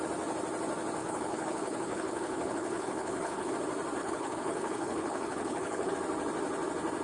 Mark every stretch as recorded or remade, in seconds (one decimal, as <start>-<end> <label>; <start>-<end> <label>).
0.0-1.0 recorded; 1.0-3.5 remade; 3.5-4.0 recorded; 4.0-5.9 remade; 5.9-7.0 recorded